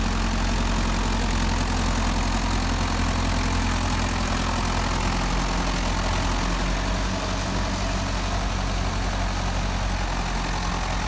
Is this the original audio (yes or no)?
yes